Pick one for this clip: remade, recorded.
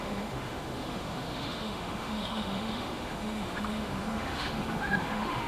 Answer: remade